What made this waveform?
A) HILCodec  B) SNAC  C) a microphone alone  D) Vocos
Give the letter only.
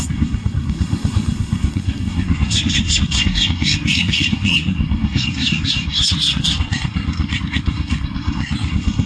B